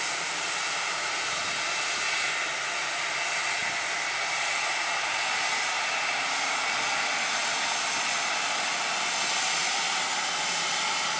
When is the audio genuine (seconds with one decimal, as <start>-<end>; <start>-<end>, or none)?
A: 0.0-11.2